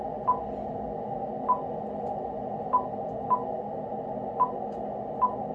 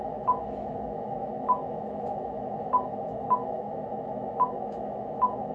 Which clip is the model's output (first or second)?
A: second